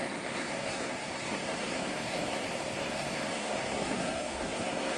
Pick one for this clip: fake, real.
fake